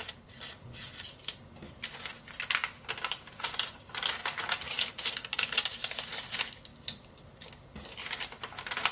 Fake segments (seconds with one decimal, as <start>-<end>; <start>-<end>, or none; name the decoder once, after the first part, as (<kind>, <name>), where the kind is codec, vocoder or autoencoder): none